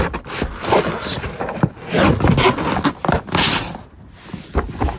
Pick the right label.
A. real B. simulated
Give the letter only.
A